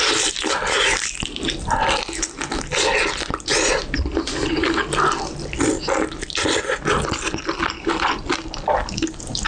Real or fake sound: real